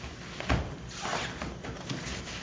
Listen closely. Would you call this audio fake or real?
real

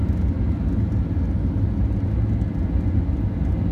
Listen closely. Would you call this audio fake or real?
real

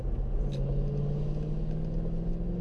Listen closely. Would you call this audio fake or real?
real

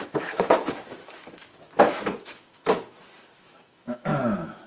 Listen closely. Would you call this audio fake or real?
fake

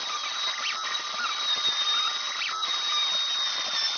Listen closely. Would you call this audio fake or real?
real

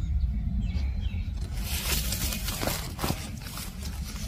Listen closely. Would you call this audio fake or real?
real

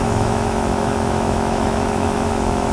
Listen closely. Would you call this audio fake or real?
fake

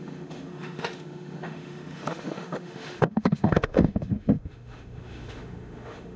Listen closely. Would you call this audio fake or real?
fake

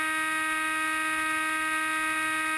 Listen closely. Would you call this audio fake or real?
real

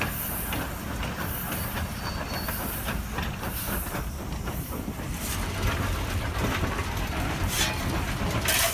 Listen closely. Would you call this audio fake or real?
real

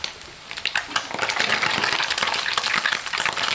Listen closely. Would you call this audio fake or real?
real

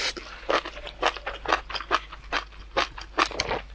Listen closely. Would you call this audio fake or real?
real